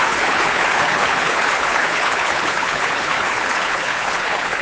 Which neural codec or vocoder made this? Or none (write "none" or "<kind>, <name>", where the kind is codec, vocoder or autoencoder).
codec, HILCodec